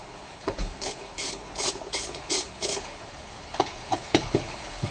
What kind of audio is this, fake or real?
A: fake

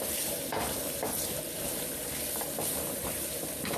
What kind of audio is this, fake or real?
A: fake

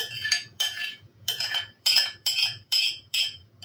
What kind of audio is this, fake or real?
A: fake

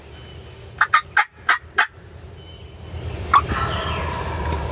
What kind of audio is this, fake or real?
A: real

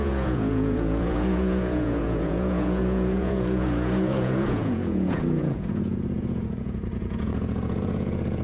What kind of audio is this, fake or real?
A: fake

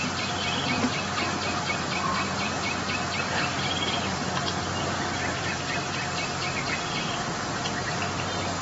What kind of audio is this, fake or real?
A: fake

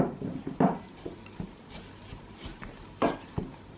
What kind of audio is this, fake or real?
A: fake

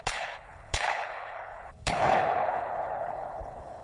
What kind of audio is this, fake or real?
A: fake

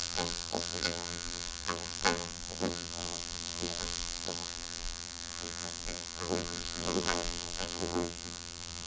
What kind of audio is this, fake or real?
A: fake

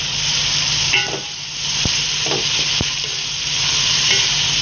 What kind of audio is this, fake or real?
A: real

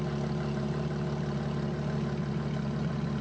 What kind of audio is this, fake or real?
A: real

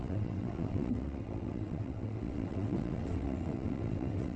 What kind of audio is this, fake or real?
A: fake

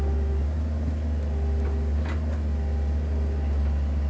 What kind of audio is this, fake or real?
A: real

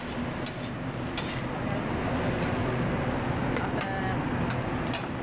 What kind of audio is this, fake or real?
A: real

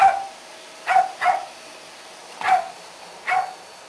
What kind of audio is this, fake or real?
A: real